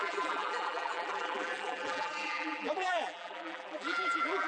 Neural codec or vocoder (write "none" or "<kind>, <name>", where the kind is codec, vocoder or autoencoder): vocoder, BigVGAN v2